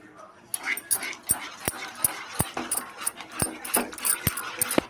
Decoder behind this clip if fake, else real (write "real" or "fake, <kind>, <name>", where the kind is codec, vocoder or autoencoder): real